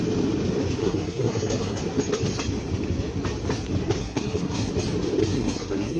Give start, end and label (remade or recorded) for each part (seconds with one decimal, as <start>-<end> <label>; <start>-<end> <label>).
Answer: 0.0-0.8 recorded; 0.8-1.8 remade; 1.8-4.0 recorded; 4.0-4.7 remade; 4.7-5.2 recorded; 5.2-6.0 remade